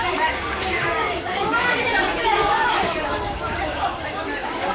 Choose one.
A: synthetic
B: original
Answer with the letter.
A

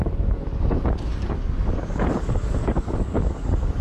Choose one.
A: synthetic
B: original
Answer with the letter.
A